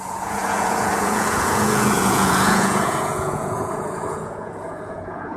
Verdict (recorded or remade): remade